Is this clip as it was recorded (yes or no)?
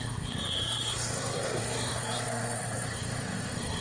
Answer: no